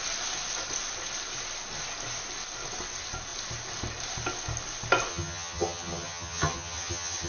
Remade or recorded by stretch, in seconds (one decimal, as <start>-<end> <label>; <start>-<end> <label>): 0.0-5.1 recorded; 5.1-7.3 remade